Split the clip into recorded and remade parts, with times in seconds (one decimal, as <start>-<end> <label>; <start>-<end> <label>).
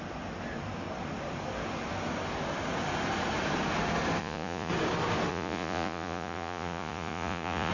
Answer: 0.0-4.2 recorded; 4.2-4.7 remade; 4.7-5.3 recorded; 5.3-7.7 remade